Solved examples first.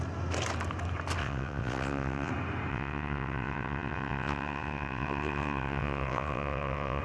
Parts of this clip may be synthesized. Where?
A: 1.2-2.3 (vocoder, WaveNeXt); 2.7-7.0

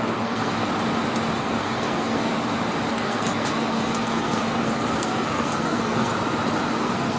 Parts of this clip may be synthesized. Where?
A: 0.0-0.7 (codec, SNAC); 1.4-2.3; 2.9-6.1; 6.8-7.2

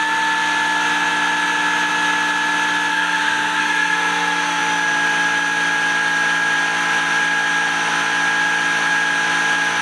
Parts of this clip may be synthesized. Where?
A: 2.9-4.6 (codec, SNAC)

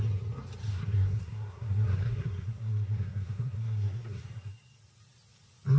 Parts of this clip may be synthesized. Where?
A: 0.7-4.2 (codec, SNAC)

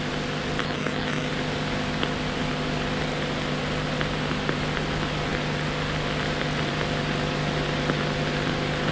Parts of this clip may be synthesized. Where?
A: 0.6-1.3 (autoencoder, DAC-VAE)

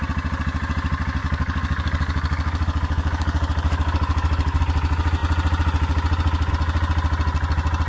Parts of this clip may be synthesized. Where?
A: 1.2-4.6 (codec, DAC)

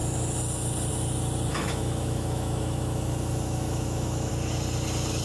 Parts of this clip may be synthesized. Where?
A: 1.5-4.3 (autoencoder, DAC-VAE)